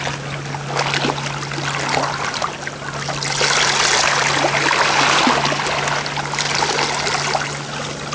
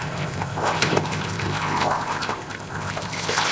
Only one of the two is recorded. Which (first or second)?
first